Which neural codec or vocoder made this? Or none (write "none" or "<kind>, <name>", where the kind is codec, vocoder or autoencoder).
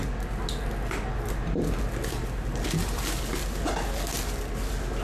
none